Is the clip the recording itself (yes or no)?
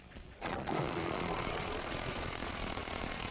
no